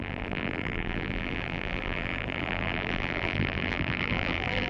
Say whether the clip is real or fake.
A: fake